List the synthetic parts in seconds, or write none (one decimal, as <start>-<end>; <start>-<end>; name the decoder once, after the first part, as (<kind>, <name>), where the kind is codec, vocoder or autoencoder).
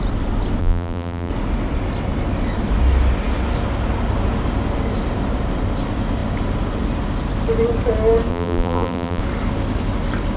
0.6-1.3 (vocoder, BigVGAN v2); 8.3-9.2